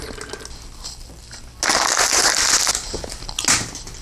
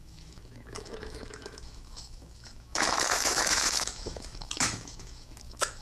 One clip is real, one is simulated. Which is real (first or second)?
first